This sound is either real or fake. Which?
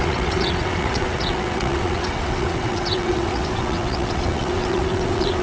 fake